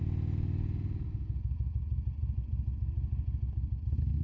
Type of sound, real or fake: real